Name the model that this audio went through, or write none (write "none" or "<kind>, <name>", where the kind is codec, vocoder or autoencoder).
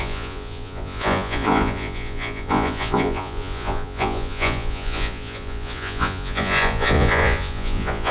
vocoder, Vocos